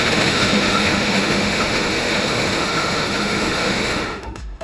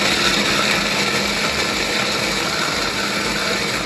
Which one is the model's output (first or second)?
first